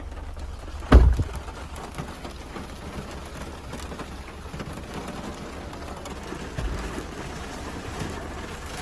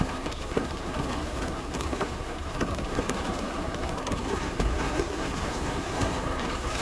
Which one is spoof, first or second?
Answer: second